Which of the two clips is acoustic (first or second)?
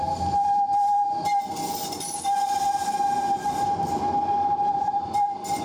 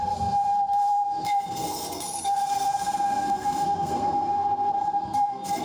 first